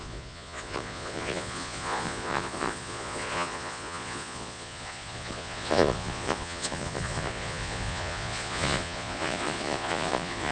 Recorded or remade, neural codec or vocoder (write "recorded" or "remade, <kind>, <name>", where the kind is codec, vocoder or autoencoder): remade, vocoder, Vocos